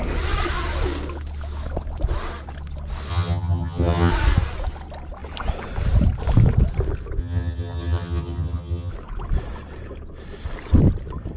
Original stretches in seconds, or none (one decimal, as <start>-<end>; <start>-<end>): 0.0-3.1; 4.1-7.2; 8.9-11.4